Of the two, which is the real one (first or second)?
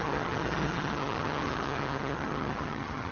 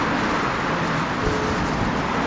second